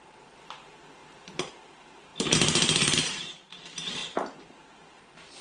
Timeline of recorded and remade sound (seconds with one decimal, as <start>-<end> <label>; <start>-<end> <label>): 0.0-2.1 remade; 2.1-3.1 recorded; 3.1-5.4 remade